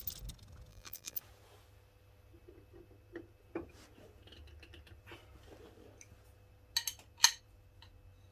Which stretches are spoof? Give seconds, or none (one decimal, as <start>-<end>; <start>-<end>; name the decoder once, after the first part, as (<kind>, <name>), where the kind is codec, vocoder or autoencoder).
0.7-1.2 (vocoder, BigVGAN v2)